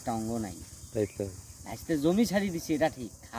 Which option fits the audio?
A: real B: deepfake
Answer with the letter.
A